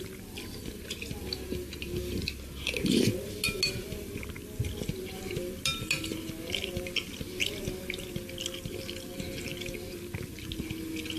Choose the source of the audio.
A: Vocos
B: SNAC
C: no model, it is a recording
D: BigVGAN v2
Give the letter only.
C